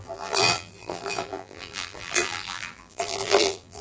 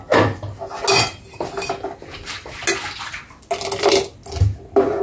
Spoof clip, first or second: first